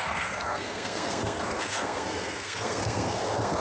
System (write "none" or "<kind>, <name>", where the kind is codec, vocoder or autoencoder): codec, SNAC